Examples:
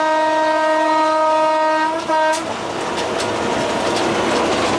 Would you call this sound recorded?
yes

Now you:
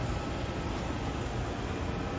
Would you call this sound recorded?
yes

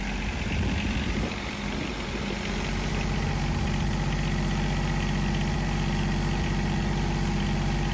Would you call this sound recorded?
yes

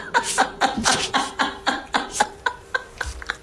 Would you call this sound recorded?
no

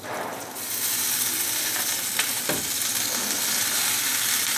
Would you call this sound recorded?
yes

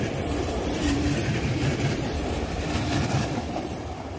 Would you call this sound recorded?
no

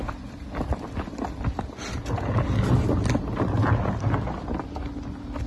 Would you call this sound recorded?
yes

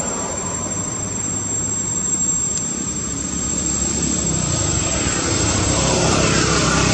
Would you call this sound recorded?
no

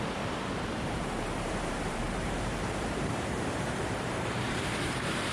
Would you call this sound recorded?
no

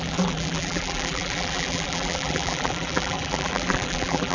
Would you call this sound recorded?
no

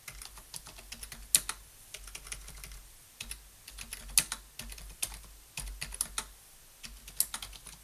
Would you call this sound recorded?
yes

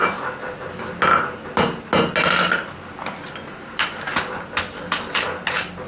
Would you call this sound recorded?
yes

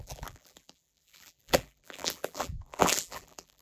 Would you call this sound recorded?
no